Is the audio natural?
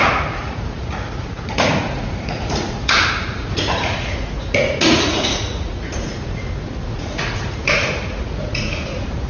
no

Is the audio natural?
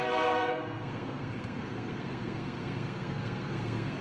no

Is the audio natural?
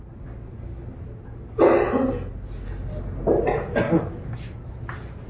yes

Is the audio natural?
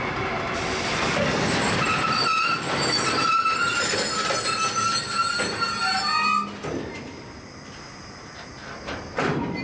yes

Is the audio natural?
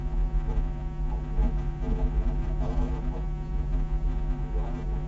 no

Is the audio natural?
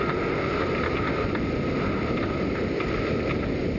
yes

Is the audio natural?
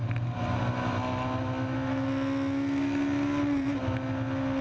yes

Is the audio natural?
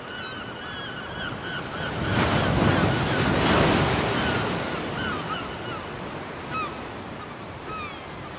yes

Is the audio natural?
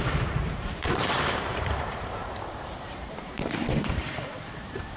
no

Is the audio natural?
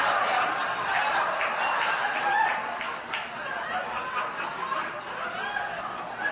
yes